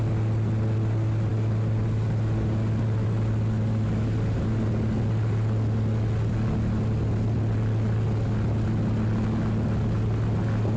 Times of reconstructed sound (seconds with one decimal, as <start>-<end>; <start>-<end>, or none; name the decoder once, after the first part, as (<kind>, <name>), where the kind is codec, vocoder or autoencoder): none